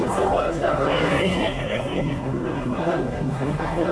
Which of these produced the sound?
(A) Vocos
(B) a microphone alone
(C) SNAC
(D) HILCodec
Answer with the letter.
C